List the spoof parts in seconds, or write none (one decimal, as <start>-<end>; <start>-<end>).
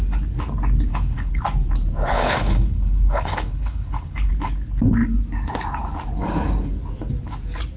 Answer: 0.9-1.4; 2.1-4.3